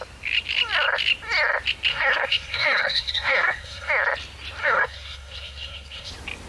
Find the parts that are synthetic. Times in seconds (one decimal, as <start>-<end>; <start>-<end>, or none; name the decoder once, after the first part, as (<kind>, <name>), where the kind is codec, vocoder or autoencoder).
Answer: 1.9-3.9 (codec, SNAC); 4.6-6.1